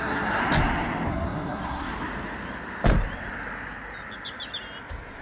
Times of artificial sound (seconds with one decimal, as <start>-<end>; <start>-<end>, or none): 0.0-0.4; 1.1-1.9